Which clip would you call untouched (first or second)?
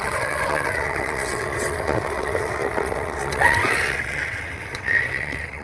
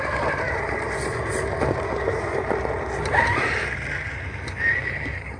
second